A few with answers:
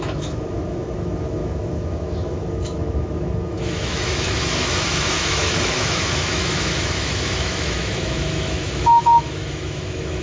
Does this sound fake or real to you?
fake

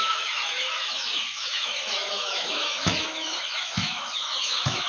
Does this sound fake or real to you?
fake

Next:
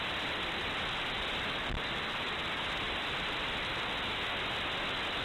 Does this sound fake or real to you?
real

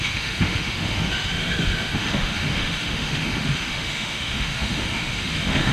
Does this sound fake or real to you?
fake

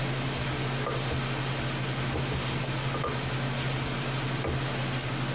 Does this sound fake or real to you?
real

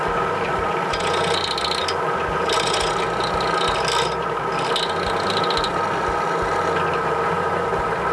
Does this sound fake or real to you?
real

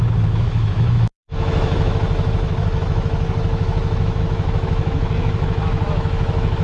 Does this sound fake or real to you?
fake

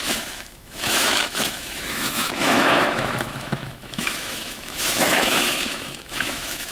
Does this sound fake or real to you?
fake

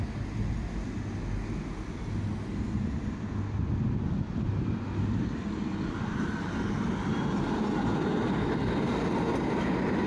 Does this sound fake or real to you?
real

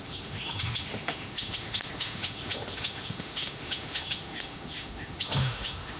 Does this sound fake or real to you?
fake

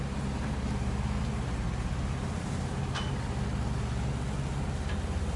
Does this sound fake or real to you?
real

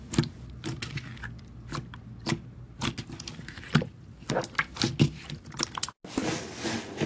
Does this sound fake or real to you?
real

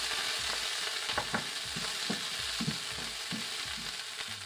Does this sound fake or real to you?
real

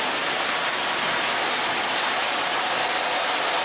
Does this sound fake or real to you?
real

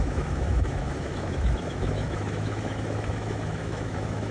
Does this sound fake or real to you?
fake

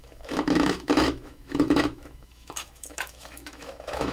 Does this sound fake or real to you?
fake